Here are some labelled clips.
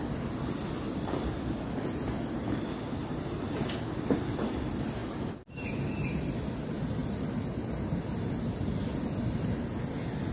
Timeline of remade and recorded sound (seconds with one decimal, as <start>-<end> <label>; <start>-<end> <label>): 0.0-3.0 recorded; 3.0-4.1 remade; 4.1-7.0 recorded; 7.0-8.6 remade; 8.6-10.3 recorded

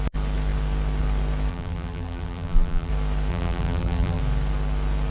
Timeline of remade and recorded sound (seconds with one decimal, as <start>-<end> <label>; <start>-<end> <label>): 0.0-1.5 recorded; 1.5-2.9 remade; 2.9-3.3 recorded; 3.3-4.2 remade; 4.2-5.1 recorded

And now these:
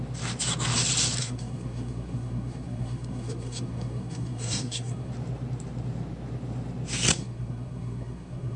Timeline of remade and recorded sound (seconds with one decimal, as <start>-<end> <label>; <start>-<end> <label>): 0.0-1.2 recorded; 1.2-5.1 remade; 5.1-7.1 recorded; 7.1-8.6 remade

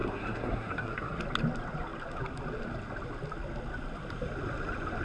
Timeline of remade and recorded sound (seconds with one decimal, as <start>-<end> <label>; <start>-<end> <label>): 0.0-1.2 remade; 1.2-5.0 recorded

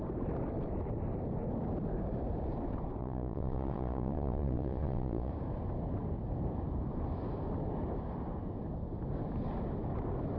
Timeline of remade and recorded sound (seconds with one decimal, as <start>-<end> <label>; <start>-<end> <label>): 0.0-3.0 recorded; 3.0-5.3 remade; 5.3-10.4 recorded